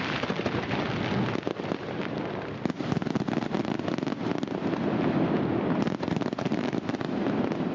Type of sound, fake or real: real